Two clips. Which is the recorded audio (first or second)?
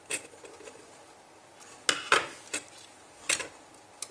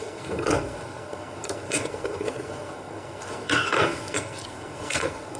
first